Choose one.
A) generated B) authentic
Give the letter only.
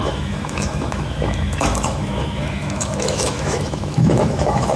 A